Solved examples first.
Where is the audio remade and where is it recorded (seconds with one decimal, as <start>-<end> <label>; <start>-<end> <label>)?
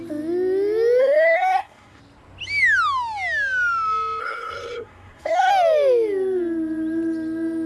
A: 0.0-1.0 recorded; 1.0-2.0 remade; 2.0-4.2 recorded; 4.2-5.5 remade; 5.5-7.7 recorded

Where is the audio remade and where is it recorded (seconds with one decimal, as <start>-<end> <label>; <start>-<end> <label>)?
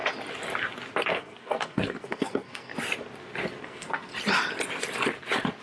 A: 0.0-1.1 recorded; 1.1-2.7 remade; 2.7-3.6 recorded; 3.6-4.1 remade; 4.1-5.6 recorded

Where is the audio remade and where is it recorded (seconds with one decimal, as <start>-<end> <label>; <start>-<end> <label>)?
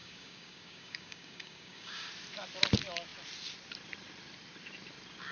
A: 0.0-2.1 remade; 2.1-5.3 recorded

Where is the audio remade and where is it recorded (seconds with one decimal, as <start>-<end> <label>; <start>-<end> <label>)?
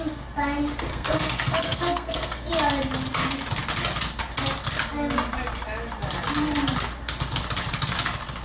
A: 0.0-0.9 recorded; 0.9-2.5 remade; 2.5-8.4 recorded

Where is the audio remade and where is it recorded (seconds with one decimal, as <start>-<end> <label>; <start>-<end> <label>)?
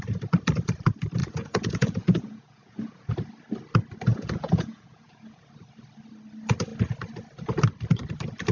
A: 0.0-1.2 recorded; 1.2-3.1 remade; 3.1-4.1 recorded; 4.1-5.5 remade; 5.5-8.5 recorded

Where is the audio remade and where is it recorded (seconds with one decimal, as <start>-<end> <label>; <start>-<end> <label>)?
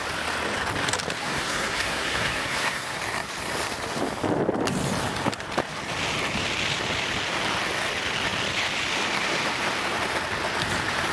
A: 0.0-1.2 recorded; 1.2-3.0 remade; 3.0-11.1 recorded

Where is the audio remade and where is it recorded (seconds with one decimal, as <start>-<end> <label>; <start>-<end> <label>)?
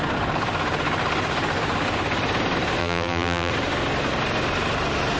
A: 0.0-2.8 recorded; 2.8-3.5 remade; 3.5-5.2 recorded